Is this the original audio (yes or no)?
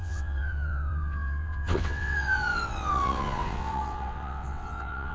no